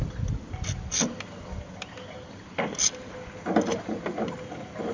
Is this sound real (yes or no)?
yes